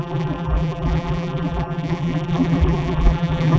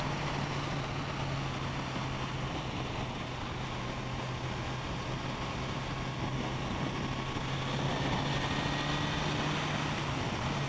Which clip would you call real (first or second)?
second